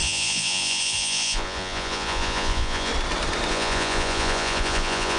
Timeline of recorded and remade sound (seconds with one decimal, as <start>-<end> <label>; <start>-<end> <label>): 0.0-2.9 remade; 2.9-3.5 recorded; 3.5-5.2 remade